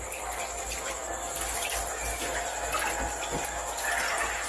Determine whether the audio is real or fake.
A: real